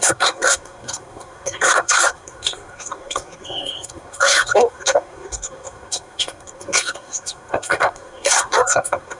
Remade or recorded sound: remade